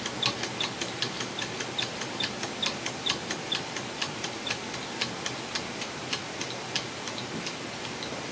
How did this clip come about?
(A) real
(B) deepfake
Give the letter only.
A